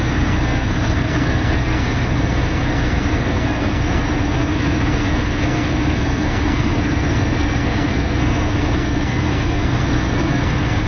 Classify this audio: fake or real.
fake